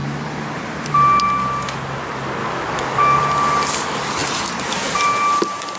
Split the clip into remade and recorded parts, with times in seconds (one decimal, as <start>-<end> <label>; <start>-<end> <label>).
0.0-2.4 recorded; 2.4-3.2 remade; 3.2-5.8 recorded

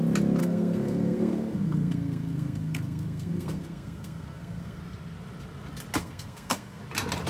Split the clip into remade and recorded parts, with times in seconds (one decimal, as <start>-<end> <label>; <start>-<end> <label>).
0.0-0.4 recorded; 0.4-4.8 remade; 4.8-6.0 recorded; 6.0-6.8 remade; 6.8-7.3 recorded

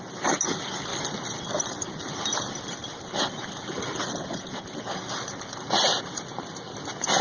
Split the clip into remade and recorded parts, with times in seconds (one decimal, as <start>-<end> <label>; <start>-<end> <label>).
0.0-7.2 recorded